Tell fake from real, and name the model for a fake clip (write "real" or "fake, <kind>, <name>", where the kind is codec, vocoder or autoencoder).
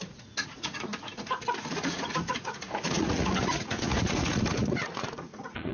fake, vocoder, Vocos